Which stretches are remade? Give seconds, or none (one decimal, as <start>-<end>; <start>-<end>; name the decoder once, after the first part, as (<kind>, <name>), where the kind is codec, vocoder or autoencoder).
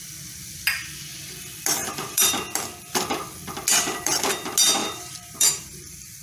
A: 1.8-2.3 (vocoder, BigVGAN v2); 4.8-5.8